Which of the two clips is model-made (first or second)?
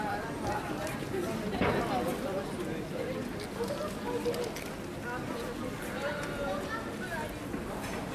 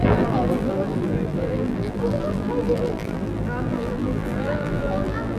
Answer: second